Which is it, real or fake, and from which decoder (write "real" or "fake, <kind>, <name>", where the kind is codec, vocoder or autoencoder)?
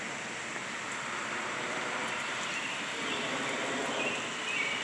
real